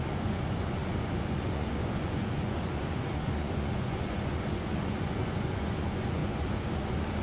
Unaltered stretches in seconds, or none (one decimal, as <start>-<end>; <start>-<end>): none